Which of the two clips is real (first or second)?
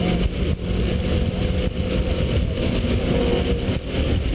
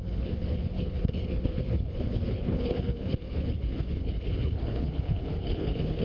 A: first